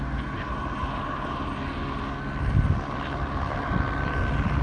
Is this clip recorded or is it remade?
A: recorded